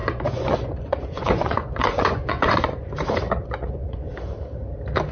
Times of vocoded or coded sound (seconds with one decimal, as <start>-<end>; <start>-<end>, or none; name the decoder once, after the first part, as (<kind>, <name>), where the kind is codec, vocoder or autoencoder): 0.0-2.9 (vocoder, Vocos); 3.4-4.1